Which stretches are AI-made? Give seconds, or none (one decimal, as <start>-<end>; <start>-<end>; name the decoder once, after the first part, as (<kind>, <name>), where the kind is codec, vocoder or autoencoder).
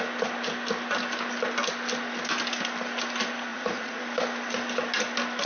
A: 3.5-4.0 (vocoder, Vocos)